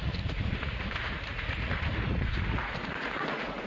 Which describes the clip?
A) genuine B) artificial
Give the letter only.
B